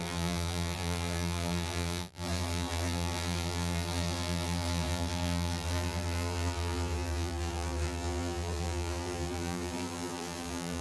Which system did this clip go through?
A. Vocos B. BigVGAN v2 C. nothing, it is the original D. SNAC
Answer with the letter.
B